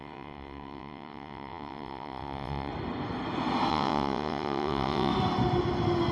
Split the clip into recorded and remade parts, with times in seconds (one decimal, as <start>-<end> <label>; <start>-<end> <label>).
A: 0.0-2.7 remade; 2.7-3.7 recorded; 3.7-5.1 remade; 5.1-6.1 recorded